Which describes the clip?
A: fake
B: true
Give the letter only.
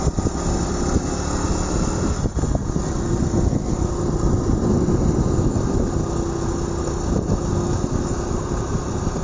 B